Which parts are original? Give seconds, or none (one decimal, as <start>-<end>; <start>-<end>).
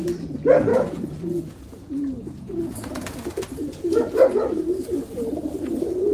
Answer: 0.0-0.7; 2.6-6.1